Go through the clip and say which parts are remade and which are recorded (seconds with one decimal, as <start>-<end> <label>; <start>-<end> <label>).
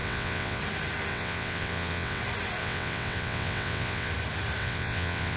0.0-0.6 remade; 0.6-1.1 recorded; 1.1-2.2 remade; 2.2-2.6 recorded; 2.6-4.1 remade; 4.1-4.6 recorded; 4.6-5.4 remade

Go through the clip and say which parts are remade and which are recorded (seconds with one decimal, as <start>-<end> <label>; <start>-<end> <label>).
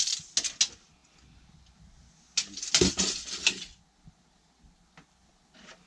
0.0-5.9 recorded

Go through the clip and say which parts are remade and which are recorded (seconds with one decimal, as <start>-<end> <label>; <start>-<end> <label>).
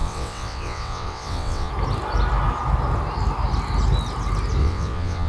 0.0-1.7 remade; 1.7-4.6 recorded; 4.6-5.3 remade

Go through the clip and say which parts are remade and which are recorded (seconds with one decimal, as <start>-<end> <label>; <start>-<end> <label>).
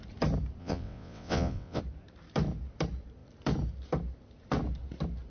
0.0-0.6 recorded; 0.6-1.8 remade; 1.8-5.3 recorded